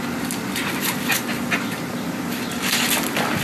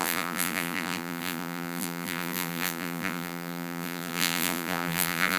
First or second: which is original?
first